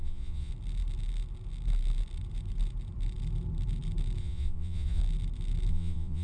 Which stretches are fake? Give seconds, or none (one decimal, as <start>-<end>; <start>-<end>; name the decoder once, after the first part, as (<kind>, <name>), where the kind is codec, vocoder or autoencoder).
0.0-0.5 (vocoder, Vocos); 4.2-5.0; 5.7-6.2